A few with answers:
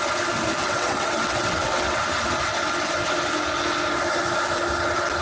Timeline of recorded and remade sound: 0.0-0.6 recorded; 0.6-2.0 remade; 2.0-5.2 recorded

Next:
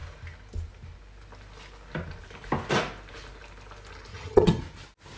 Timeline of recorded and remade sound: 0.0-4.1 recorded; 4.1-4.6 remade; 4.6-5.2 recorded

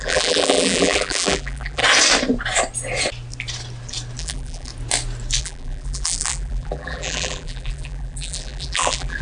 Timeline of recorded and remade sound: 0.0-1.8 remade; 1.8-4.2 recorded; 4.2-4.7 remade; 4.7-5.4 recorded; 5.4-9.2 remade

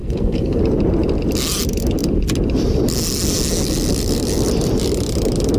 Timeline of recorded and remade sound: 0.0-0.6 remade; 0.6-5.6 recorded

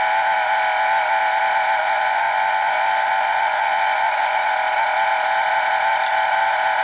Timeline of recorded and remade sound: 0.0-1.8 recorded; 1.8-4.5 remade; 4.5-6.8 recorded